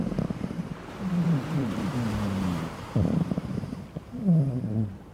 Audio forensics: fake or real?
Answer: fake